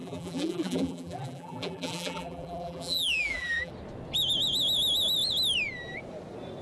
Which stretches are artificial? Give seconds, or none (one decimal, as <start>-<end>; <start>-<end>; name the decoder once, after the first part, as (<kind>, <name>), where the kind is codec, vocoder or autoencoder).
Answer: 0.0-3.7 (vocoder, BigVGAN v2)